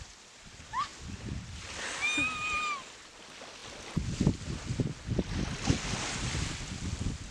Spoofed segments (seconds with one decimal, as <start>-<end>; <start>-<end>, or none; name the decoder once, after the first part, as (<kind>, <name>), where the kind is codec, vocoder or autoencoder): none